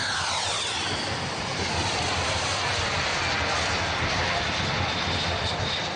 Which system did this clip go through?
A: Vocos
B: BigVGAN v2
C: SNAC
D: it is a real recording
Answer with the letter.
B